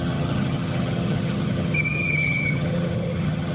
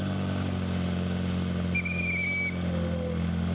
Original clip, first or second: second